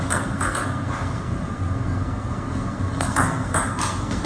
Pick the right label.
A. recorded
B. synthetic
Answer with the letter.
B